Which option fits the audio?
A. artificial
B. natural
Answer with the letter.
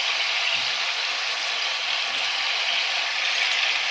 B